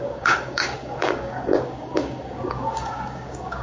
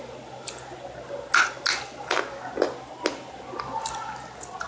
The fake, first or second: first